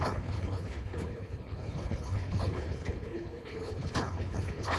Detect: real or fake fake